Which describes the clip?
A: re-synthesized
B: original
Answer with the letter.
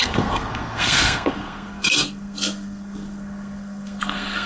A